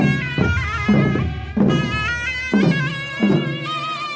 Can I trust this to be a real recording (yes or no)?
yes